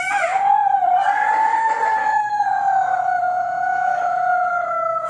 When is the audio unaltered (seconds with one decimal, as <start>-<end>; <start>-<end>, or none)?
0.0-2.0